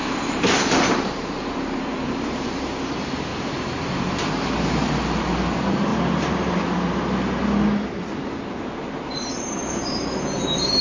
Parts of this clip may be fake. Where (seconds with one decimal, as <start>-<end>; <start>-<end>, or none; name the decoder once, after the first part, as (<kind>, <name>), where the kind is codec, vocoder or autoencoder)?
0.0-5.9 (vocoder, BigVGAN v2); 9.3-10.8